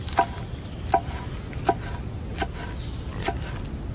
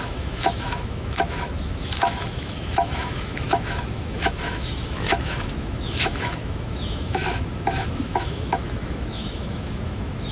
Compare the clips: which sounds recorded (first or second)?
first